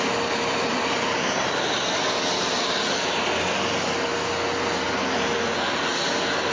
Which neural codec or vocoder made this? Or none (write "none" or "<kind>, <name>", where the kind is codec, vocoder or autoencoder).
none